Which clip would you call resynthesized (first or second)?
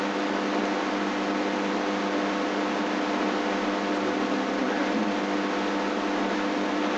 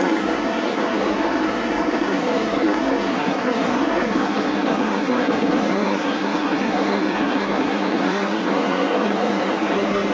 second